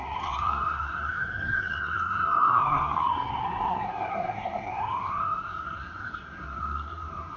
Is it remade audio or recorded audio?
remade